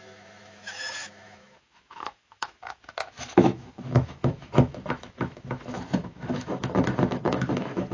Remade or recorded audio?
remade